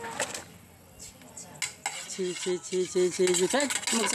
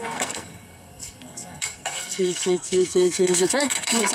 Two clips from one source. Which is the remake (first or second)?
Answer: second